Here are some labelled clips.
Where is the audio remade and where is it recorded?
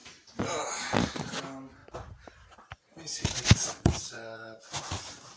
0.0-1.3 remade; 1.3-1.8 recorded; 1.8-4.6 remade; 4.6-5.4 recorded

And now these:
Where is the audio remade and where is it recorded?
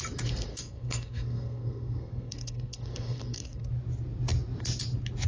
0.0-0.5 recorded; 0.5-3.7 remade; 3.7-5.3 recorded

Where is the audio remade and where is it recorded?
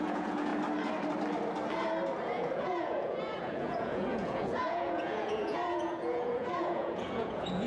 0.0-0.5 remade; 0.5-2.2 recorded; 2.2-7.7 remade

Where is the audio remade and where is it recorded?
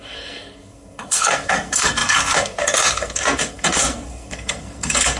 0.0-5.2 remade